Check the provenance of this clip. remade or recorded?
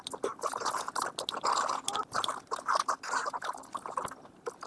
recorded